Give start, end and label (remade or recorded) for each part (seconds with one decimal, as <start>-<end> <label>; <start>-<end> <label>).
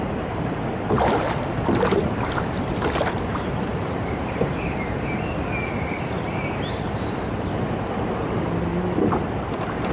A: 0.0-8.7 remade; 8.7-9.5 recorded; 9.5-9.9 remade